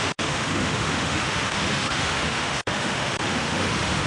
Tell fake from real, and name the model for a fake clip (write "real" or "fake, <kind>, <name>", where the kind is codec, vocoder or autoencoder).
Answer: fake, autoencoder, DAC-VAE